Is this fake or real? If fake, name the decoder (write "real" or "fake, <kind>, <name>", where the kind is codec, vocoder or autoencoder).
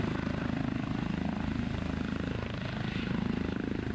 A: real